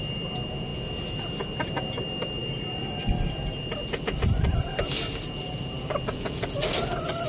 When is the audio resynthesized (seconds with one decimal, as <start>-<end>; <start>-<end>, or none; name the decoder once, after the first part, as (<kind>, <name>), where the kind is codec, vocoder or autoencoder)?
none